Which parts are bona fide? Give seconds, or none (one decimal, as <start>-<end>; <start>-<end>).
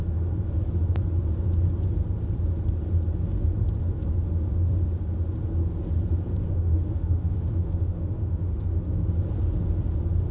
0.0-6.3; 9.1-10.3